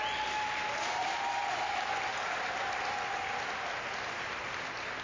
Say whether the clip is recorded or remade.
recorded